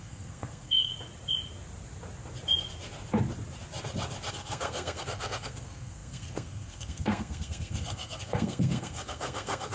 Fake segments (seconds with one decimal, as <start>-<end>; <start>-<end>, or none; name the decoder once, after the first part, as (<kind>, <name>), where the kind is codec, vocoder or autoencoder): 0.0-0.9 (codec, SNAC); 4.3-9.7